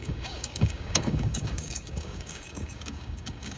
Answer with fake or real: fake